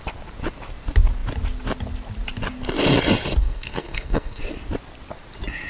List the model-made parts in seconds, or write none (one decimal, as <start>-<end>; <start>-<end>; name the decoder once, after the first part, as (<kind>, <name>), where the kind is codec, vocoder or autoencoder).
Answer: 3.4-4.4 (codec, SNAC)